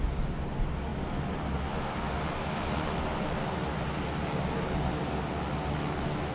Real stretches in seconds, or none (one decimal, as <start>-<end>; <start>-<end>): 0.0-6.3